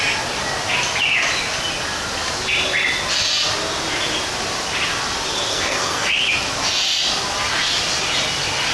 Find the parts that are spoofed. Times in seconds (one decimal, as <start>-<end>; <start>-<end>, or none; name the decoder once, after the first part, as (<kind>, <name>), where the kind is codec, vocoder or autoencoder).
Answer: 5.5-6.1 (codec, SNAC)